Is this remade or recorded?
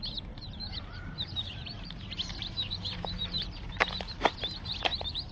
remade